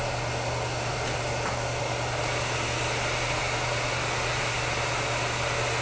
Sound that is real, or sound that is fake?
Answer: real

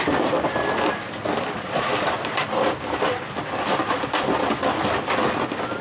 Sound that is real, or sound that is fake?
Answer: real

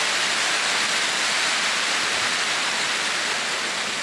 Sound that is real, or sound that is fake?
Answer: real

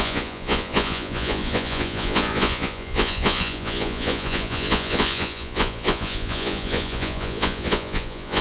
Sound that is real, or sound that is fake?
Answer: fake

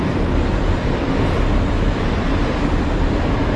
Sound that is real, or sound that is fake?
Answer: real